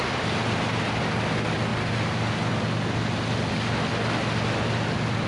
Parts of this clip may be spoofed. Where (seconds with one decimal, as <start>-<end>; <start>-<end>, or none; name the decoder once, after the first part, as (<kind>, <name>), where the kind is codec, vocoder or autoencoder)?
none